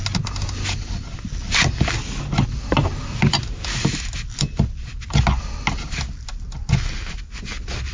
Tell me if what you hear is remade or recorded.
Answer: recorded